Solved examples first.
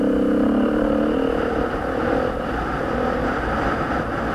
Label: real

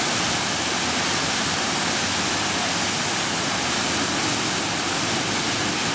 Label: real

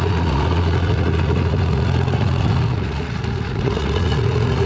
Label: fake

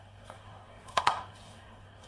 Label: fake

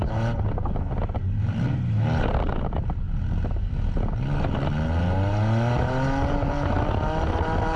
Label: real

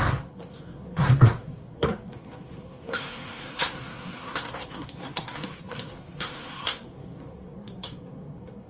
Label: fake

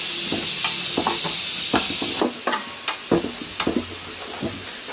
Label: real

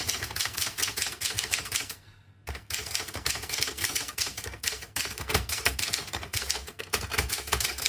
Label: fake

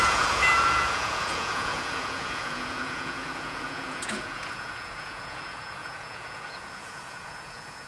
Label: fake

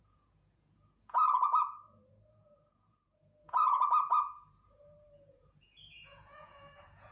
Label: fake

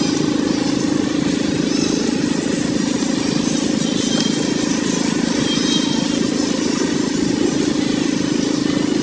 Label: real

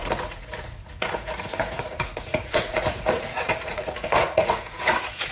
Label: fake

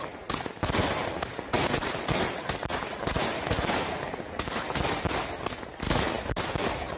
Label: real